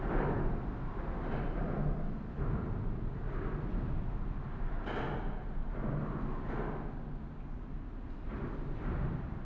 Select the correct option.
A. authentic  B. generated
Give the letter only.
A